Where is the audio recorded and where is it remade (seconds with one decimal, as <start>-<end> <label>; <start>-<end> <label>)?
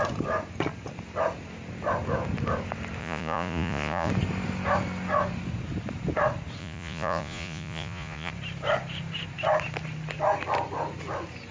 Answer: 0.0-3.0 recorded; 3.0-4.1 remade; 4.1-6.6 recorded; 6.6-8.3 remade; 8.3-11.5 recorded